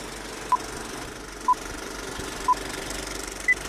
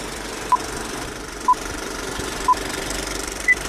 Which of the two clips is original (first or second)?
first